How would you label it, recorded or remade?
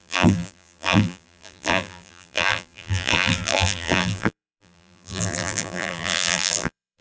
remade